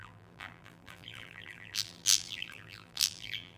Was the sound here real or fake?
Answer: fake